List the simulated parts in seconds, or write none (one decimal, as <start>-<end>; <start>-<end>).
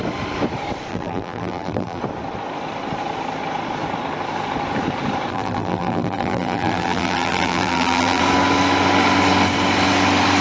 0.9-2.0; 5.3-8.2